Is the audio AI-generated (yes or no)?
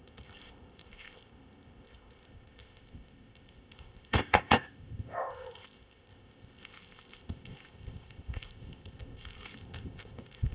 yes